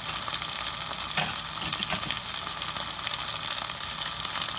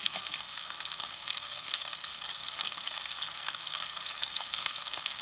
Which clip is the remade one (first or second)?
second